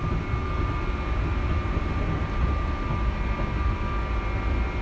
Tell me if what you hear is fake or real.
real